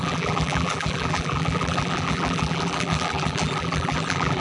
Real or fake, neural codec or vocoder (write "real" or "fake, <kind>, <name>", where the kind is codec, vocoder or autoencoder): fake, vocoder, BigVGAN v2